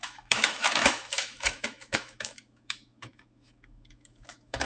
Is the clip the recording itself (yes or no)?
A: no